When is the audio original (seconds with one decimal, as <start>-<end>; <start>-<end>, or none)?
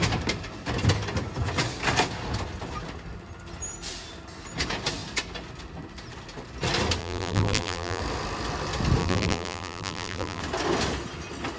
0.0-7.0; 8.0-9.0; 10.4-11.6